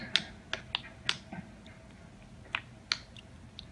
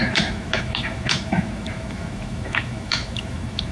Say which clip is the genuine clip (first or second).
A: first